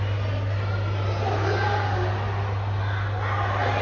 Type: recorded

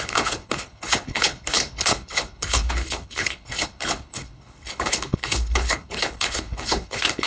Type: remade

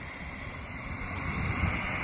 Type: recorded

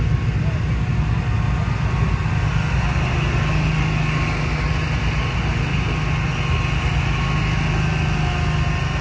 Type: recorded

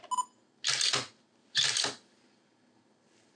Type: recorded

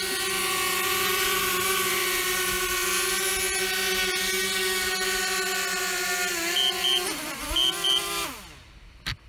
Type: recorded